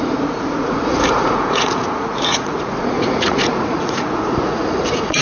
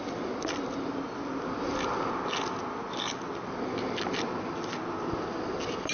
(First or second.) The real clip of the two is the second